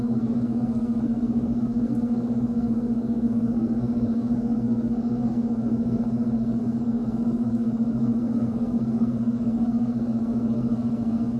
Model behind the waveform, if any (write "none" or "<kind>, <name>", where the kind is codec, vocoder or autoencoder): codec, SNAC